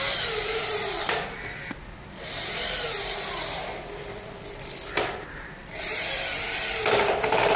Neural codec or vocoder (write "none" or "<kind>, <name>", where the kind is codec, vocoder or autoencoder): vocoder, BigVGAN v2